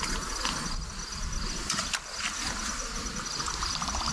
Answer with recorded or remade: recorded